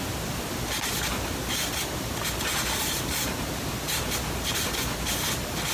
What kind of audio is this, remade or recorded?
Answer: recorded